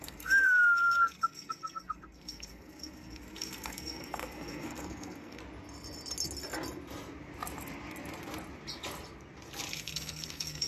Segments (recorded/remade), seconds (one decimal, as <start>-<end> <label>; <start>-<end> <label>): 0.0-5.4 remade; 5.4-9.7 recorded; 9.7-10.7 remade